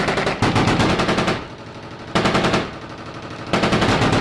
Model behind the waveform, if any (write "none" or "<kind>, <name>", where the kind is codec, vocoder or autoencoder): none